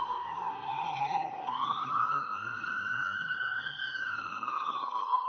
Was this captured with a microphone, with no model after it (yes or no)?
no